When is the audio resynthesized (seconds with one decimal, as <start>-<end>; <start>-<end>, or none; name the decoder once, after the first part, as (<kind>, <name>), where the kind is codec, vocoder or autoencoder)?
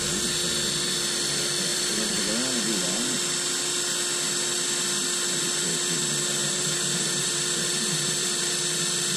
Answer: 1.7-2.2 (vocoder, BigVGAN v2); 6.4-8.6